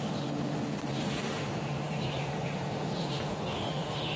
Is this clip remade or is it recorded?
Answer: remade